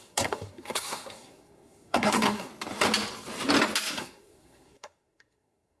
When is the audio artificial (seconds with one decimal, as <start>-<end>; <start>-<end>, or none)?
0.0-2.5; 3.9-5.8